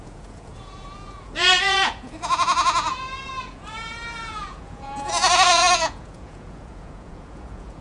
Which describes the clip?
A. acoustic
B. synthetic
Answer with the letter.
B